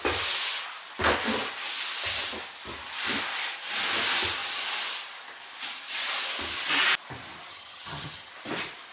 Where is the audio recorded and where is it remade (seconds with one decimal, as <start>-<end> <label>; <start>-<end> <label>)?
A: 0.0-7.5 recorded; 7.5-8.3 remade; 8.3-8.9 recorded